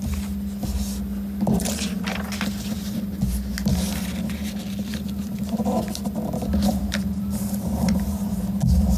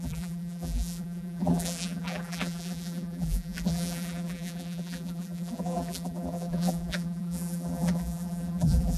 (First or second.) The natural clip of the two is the first